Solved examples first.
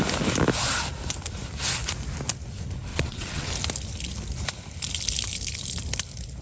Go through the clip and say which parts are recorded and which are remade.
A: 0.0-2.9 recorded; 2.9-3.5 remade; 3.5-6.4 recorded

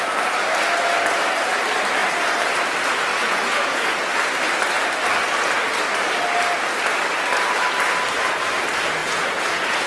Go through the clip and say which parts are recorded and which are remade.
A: 0.0-3.1 recorded; 3.1-3.9 remade; 3.9-9.0 recorded; 9.0-9.9 remade